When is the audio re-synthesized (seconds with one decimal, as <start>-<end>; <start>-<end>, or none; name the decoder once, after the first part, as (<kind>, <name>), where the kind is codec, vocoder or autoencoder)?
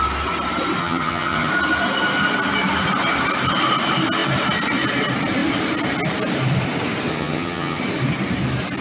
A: 0.8-1.5 (vocoder, HiFi-GAN); 7.1-7.8